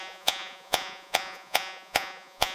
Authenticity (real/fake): fake